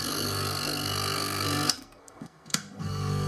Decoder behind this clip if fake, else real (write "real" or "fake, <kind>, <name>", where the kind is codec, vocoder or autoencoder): fake, codec, SNAC